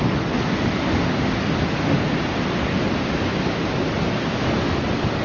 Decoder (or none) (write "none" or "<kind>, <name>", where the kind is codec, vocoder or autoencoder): none